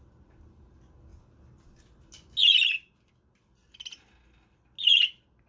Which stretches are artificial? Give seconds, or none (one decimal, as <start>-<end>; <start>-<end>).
none